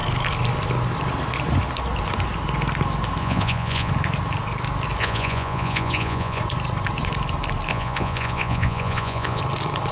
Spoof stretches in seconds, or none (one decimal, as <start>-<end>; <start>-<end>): 3.2-3.9; 5.0-6.4; 7.7-9.4